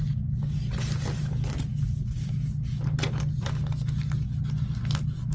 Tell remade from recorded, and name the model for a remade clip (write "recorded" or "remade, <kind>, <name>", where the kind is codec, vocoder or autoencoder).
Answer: recorded